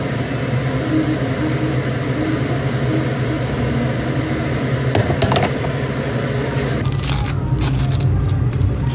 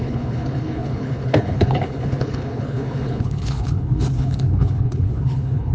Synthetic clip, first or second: second